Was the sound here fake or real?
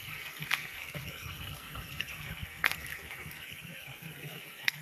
fake